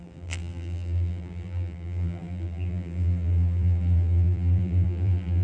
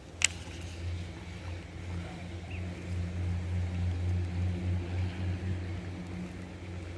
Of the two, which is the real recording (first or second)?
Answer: second